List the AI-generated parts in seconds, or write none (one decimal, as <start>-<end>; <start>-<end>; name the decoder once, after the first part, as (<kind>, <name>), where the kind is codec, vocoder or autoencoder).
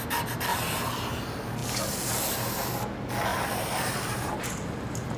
3.3-4.5 (vocoder, BigVGAN v2)